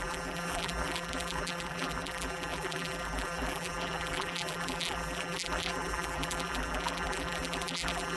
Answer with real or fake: fake